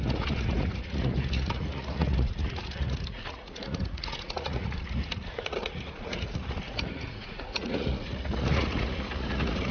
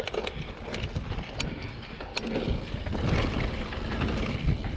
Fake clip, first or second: first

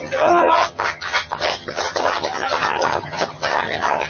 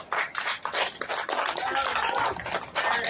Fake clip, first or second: first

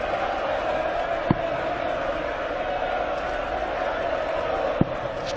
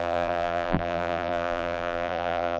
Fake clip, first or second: second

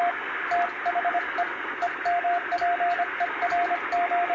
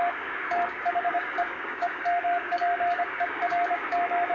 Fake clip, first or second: second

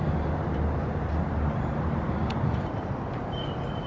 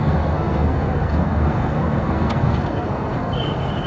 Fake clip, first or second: second